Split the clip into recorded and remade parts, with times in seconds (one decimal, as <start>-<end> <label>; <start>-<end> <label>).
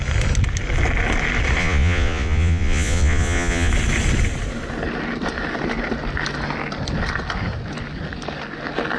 0.0-1.6 recorded; 1.6-3.7 remade; 3.7-9.0 recorded